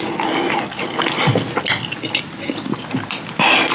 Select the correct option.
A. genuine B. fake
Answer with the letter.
A